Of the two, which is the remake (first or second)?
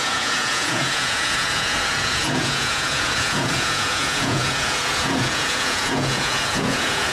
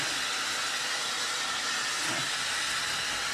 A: first